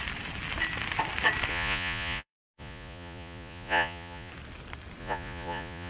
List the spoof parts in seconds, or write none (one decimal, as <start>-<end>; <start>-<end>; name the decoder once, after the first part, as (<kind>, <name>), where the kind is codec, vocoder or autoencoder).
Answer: 1.5-4.3 (vocoder, Vocos); 5.0-5.9